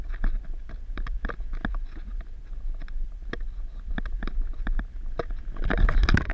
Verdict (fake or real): real